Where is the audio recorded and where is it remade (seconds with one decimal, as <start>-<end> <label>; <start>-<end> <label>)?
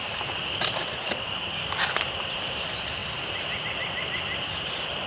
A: 0.0-5.1 recorded